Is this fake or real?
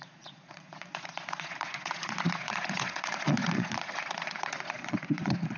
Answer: fake